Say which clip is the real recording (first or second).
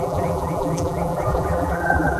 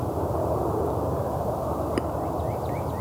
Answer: second